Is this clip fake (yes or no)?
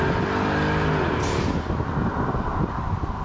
no